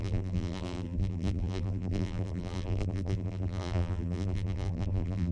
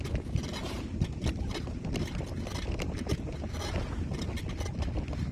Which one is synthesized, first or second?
first